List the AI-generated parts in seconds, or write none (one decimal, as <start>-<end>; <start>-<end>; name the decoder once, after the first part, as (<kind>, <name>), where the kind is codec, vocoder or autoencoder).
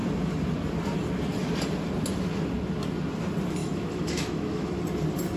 3.6-4.8 (autoencoder, DAC-VAE)